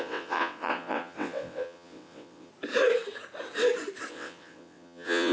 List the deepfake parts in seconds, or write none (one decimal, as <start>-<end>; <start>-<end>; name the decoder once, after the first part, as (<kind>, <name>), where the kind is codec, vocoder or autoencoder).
0.0-2.5 (vocoder, WaveNeXt); 4.1-5.3